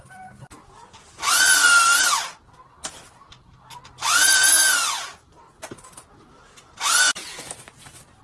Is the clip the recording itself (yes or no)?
yes